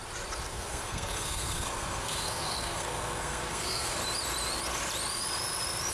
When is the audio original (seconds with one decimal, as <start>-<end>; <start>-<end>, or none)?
0.0-0.5; 4.0-5.9